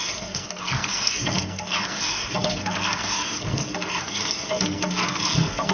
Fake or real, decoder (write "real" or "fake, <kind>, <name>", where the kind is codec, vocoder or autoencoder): fake, codec, SNAC